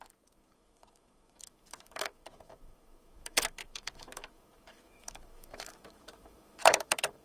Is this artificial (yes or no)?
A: yes